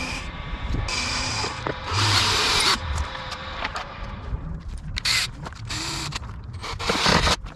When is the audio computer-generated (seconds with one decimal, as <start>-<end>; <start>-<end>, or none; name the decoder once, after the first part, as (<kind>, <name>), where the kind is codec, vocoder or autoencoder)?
0.0-6.6 (vocoder, BigVGAN v2)